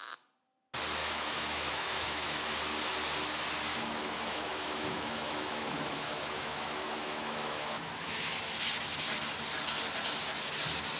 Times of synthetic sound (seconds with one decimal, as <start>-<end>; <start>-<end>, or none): 1.0-2.6; 3.7-8.4